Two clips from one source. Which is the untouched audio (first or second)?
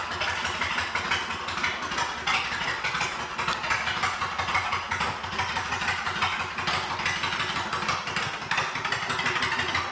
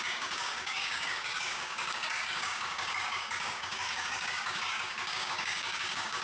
first